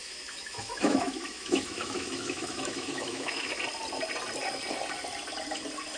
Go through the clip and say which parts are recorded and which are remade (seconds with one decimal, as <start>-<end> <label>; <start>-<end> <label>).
0.0-3.6 remade; 3.6-6.0 recorded